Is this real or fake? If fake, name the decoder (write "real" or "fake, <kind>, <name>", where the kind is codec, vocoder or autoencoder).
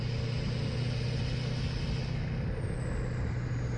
real